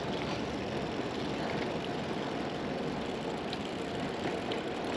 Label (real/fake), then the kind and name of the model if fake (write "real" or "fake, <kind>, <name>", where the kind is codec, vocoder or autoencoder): real